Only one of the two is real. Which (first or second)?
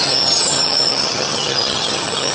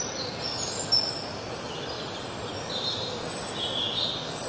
second